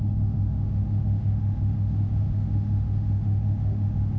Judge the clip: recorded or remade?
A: remade